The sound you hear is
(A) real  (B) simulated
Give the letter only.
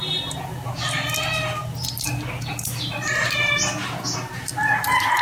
A